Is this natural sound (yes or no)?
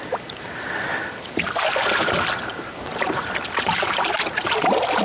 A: yes